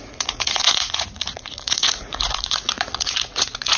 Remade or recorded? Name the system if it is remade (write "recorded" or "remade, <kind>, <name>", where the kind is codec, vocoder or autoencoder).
remade, vocoder, Vocos